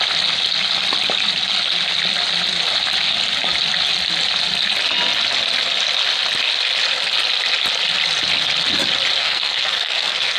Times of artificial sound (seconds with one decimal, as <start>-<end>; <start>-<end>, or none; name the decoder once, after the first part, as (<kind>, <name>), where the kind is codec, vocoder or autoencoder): 9.2-10.4 (codec, SNAC)